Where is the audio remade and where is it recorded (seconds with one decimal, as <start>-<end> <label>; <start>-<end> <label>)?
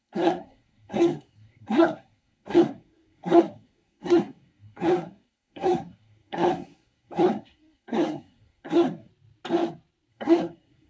0.0-9.1 remade; 9.1-10.1 recorded; 10.1-10.9 remade